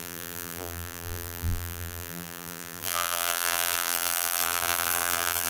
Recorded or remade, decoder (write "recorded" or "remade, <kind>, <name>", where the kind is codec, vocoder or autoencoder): remade, vocoder, BigVGAN v2